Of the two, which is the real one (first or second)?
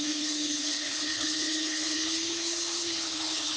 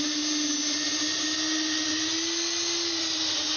second